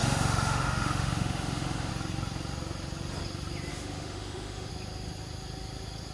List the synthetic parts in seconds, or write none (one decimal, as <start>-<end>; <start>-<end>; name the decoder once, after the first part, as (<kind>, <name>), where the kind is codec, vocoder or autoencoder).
0.0-1.9 (autoencoder, DAC-VAE); 3.7-4.7